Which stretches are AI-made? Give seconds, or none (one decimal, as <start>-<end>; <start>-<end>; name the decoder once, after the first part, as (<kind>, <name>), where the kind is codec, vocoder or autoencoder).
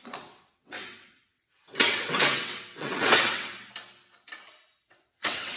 0.0-3.5 (vocoder, WaveNeXt); 4.9-5.6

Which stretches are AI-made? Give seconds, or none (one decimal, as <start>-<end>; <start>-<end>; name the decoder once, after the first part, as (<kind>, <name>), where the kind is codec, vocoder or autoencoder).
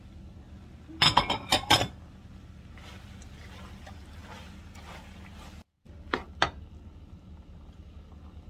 none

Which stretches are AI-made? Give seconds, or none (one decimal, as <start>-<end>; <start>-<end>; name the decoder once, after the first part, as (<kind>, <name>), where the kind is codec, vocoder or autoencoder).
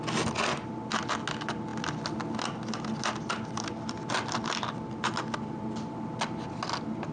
none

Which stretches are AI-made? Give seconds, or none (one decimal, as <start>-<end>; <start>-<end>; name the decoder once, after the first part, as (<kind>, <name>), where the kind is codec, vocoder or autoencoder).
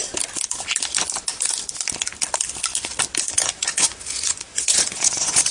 3.3-5.5 (vocoder, Vocos)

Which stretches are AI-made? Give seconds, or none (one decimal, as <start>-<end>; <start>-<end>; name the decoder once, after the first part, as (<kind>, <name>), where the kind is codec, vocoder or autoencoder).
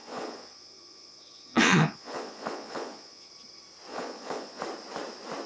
0.0-3.3 (vocoder, Vocos); 3.9-4.6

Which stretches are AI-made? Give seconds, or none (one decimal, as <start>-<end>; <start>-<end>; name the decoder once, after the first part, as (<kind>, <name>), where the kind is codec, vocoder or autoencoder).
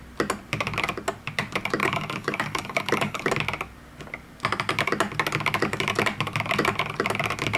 1.8-3.3 (codec, DAC)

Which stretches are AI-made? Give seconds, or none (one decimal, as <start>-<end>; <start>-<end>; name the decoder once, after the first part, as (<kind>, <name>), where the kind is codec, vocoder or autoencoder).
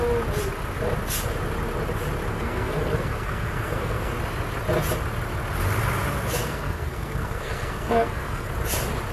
2.3-4.1 (codec, SNAC); 6.4-8.5